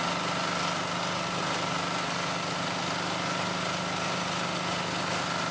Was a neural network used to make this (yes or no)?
no